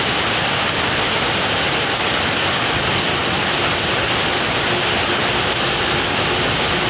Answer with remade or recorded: recorded